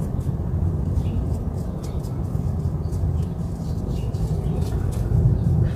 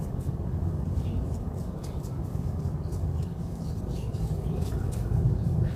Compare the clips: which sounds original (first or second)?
first